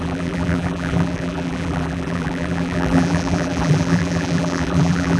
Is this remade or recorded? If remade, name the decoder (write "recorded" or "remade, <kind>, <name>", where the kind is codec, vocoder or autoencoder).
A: remade, vocoder, BigVGAN v2